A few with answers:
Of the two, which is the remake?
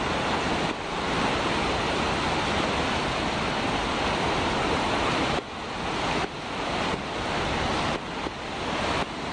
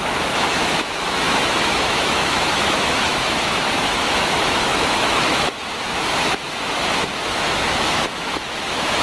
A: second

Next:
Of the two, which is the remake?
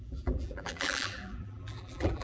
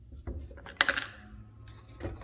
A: first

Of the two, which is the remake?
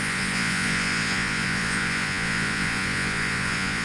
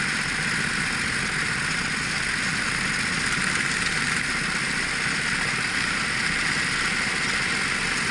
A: first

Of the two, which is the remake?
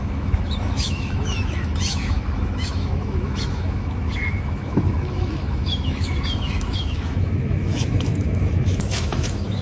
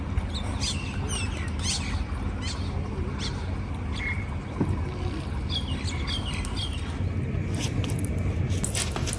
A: first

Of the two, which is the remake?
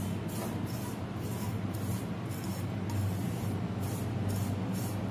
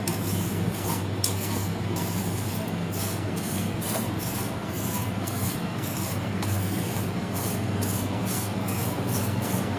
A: second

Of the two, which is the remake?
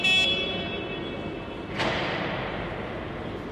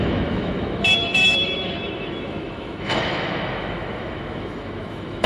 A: second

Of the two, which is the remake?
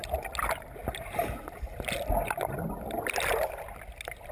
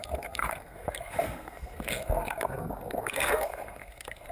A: second